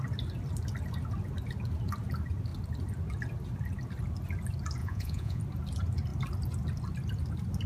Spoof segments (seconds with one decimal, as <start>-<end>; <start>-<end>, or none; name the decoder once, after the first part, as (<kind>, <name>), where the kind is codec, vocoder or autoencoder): 4.8-5.4 (vocoder, Vocos)